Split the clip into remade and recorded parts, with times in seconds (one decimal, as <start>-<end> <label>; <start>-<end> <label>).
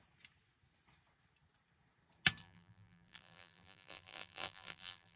0.0-2.4 recorded; 2.4-5.2 remade